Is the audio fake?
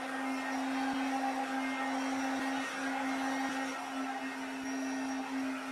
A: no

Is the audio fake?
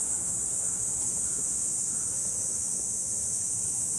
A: yes